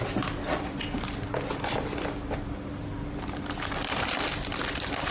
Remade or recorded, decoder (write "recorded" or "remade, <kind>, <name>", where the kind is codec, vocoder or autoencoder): recorded